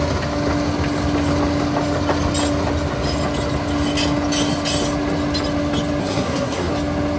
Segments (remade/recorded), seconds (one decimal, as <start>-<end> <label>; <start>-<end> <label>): 0.0-6.0 recorded; 6.0-6.7 remade; 6.7-7.2 recorded